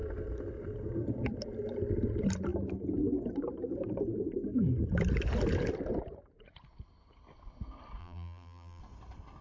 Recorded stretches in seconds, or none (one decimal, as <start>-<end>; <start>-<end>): 0.0-8.0; 8.8-9.4